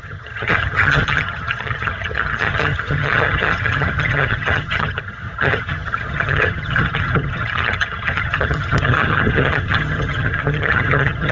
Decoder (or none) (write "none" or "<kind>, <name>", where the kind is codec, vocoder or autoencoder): vocoder, HiFi-GAN